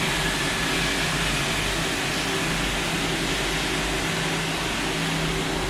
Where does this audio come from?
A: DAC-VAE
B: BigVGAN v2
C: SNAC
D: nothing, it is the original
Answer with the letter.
D